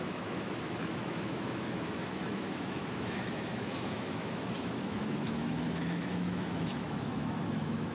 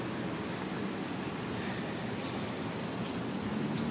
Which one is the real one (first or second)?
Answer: second